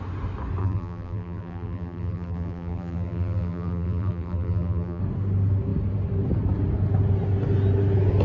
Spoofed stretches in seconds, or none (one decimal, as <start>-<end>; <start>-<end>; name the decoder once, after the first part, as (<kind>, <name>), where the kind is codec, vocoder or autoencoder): 0.6-5.0 (vocoder, BigVGAN v2)